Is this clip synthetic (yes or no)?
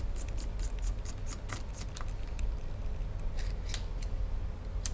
no